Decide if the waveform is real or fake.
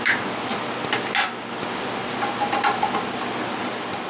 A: real